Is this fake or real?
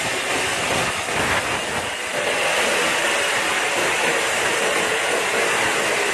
real